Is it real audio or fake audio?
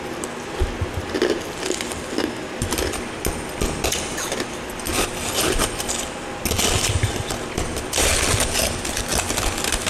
real